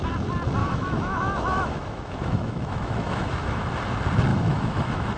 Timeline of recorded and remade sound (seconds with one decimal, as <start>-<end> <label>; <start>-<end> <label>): 0.0-0.6 recorded; 0.6-3.7 remade; 3.7-4.3 recorded; 4.3-5.2 remade

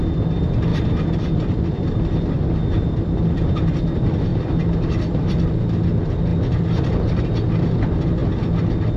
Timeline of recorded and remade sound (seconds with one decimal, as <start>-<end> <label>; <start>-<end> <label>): 0.0-0.7 recorded; 0.7-3.8 remade; 3.8-4.3 recorded; 4.3-5.5 remade; 5.5-6.3 recorded; 6.3-7.2 remade; 7.2-9.0 recorded

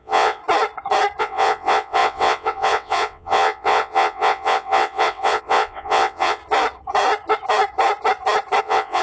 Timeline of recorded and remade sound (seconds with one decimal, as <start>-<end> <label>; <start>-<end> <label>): 0.0-0.4 remade; 0.4-1.2 recorded; 1.2-6.4 remade; 6.4-8.6 recorded; 8.6-9.0 remade

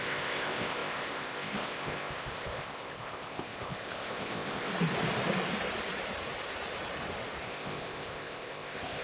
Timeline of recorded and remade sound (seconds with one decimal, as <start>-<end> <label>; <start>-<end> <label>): 0.0-4.7 remade; 4.7-7.4 recorded; 7.4-9.0 remade

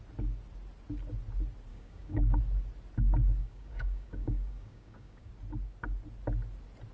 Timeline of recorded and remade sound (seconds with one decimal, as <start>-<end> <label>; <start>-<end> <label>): 0.0-1.7 recorded; 1.7-2.4 remade; 2.4-3.4 recorded; 3.4-5.3 remade; 5.3-6.9 recorded

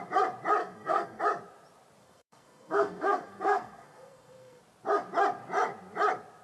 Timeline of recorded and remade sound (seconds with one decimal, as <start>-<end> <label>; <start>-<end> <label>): 0.0-0.6 recorded; 0.6-1.2 remade; 1.2-2.0 recorded; 2.0-4.6 remade; 4.6-6.4 recorded

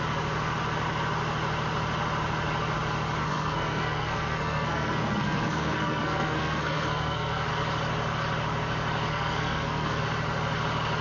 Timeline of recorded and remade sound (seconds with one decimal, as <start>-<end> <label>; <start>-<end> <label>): 0.0-3.2 recorded; 3.2-7.5 remade; 7.5-9.1 recorded; 9.1-10.0 remade; 10.0-11.0 recorded

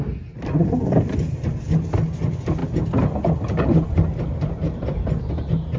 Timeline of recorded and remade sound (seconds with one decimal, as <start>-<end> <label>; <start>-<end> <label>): 0.0-5.8 recorded